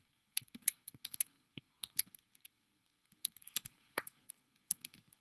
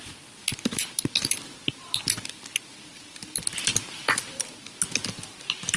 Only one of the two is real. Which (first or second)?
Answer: second